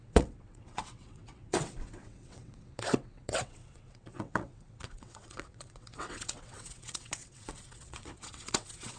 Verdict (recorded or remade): remade